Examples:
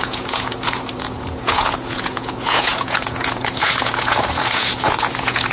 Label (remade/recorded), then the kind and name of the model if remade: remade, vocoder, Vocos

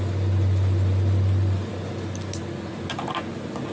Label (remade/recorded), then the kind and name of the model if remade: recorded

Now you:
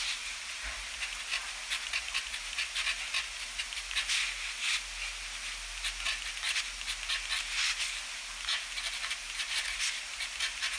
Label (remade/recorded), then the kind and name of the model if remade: recorded